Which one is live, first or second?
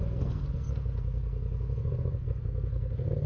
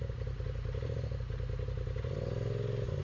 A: second